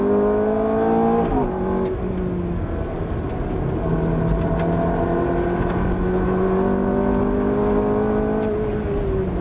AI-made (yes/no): no